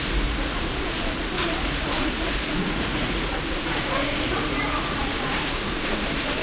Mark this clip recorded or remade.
remade